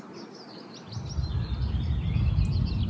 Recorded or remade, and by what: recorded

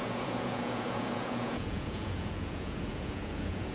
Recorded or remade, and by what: remade, vocoder, Vocos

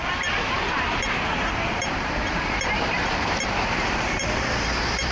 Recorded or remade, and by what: remade, vocoder, BigVGAN v2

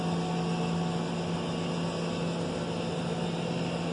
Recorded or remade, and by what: recorded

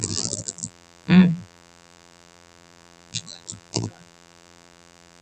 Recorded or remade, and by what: remade, vocoder, BigVGAN v2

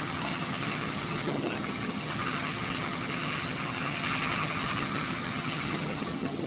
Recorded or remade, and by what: remade, vocoder, HiFi-GAN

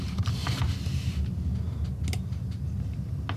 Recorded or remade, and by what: recorded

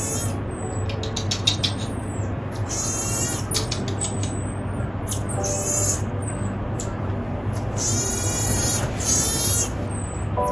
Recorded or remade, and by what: recorded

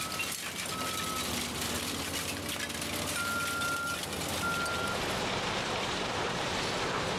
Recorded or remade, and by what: recorded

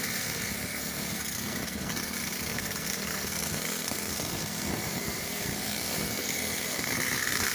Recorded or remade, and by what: remade, codec, SNAC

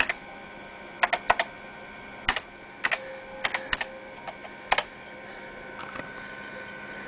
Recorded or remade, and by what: recorded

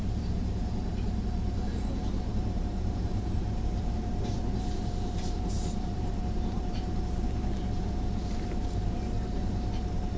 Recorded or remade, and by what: remade, vocoder, BigVGAN v2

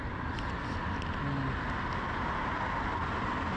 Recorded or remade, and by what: recorded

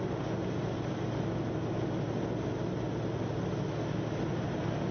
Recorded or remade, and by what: recorded